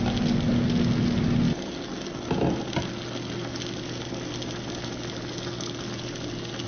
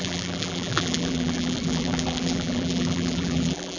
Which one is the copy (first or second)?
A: second